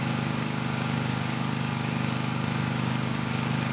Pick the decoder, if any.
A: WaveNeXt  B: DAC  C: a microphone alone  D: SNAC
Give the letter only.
B